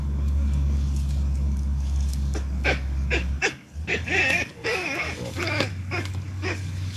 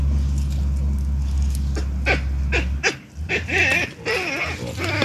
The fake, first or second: first